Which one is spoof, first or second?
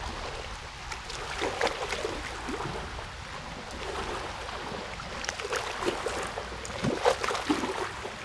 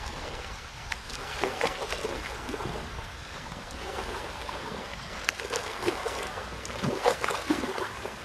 second